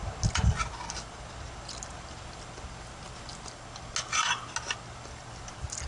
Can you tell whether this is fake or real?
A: real